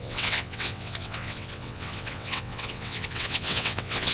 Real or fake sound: fake